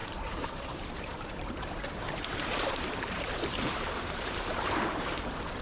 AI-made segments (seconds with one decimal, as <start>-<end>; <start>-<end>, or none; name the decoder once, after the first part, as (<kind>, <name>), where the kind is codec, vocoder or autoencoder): 0.0-5.6 (vocoder, BigVGAN v2)